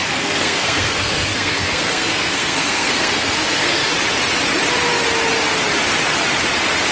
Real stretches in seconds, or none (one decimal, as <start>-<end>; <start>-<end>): 3.9-6.9